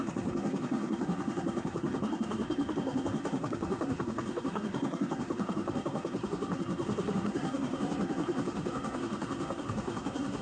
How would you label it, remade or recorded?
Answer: remade